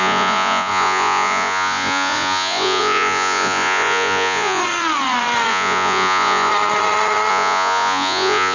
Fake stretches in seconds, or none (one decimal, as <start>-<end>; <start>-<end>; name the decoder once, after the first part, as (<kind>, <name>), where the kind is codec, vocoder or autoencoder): 0.0-4.6 (vocoder, Vocos); 5.5-6.5; 7.3-8.5